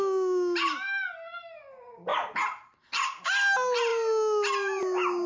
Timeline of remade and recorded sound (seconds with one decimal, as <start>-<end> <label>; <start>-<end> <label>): 0.0-5.3 recorded